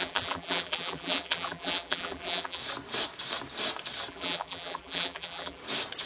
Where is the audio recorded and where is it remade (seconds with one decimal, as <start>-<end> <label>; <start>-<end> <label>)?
0.0-2.6 remade; 2.6-4.1 recorded; 4.1-5.6 remade; 5.6-6.1 recorded